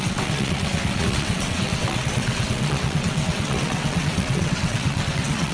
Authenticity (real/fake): fake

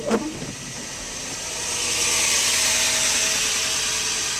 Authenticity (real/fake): real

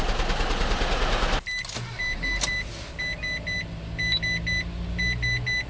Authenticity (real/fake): real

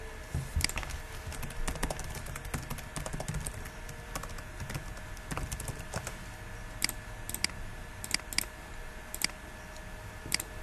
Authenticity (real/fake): real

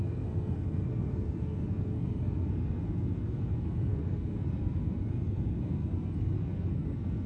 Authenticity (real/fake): fake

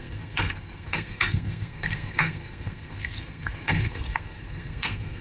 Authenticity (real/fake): fake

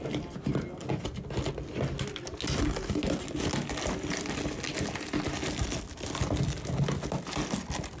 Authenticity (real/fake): real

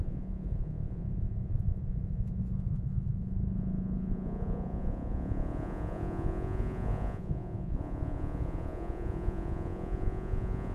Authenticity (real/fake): fake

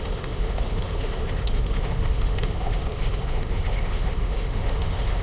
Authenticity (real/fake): fake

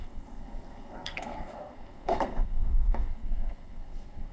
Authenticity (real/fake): fake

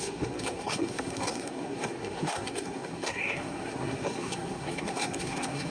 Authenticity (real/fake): fake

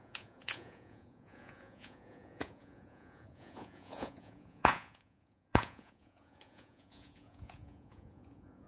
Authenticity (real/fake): fake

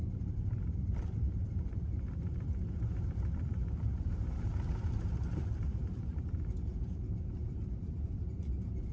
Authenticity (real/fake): fake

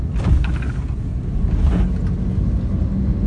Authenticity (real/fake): real